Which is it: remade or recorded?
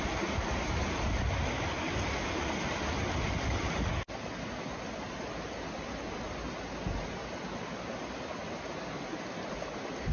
recorded